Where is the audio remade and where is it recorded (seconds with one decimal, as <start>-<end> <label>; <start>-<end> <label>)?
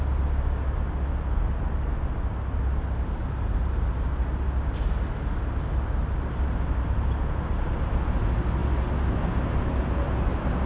0.0-10.7 recorded